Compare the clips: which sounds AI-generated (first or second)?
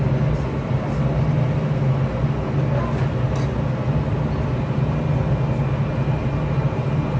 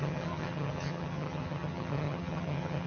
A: second